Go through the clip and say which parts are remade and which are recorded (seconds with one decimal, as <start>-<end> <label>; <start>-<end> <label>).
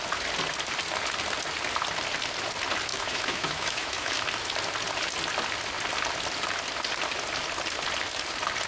0.0-2.9 recorded; 2.9-4.2 remade; 4.2-8.7 recorded